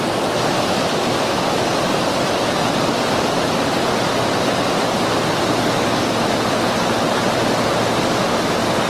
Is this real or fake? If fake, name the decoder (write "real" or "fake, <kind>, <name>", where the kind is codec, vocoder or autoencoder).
real